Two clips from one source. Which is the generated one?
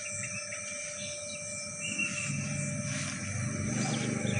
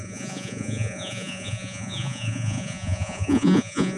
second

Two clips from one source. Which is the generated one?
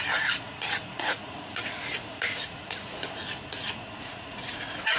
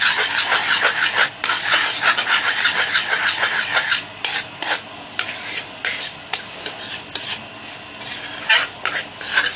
first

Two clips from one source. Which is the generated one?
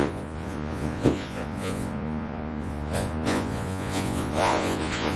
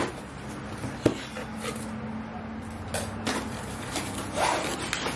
first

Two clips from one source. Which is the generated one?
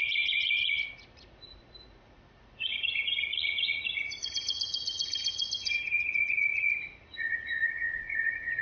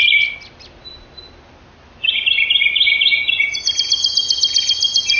first